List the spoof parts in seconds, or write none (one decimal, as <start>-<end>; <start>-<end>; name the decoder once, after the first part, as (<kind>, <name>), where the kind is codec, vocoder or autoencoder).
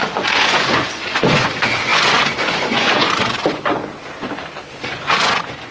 0.0-3.8 (vocoder, Vocos); 4.7-5.7